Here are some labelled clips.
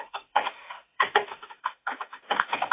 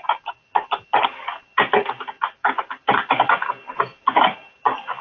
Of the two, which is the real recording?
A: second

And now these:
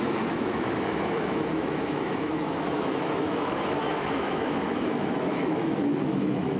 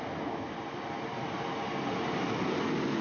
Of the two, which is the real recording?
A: second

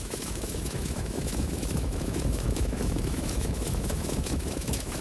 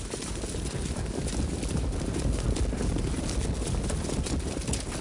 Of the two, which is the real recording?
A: second